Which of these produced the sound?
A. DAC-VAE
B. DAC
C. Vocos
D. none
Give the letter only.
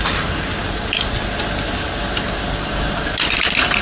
D